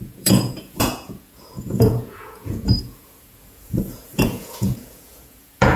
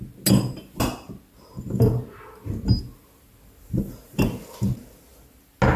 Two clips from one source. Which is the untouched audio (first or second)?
second